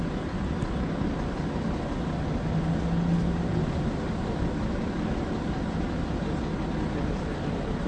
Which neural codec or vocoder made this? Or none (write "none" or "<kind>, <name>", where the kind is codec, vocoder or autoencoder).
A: none